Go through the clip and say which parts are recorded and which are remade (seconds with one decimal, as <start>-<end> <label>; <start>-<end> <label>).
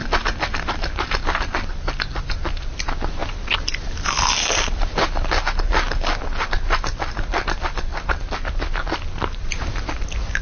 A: 0.0-10.4 recorded